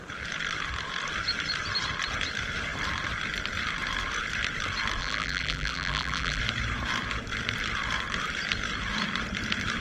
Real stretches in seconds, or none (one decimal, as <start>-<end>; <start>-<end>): 0.0-5.0; 6.4-9.8